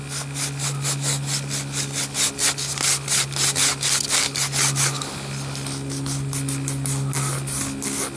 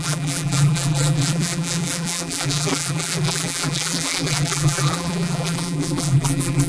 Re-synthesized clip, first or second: second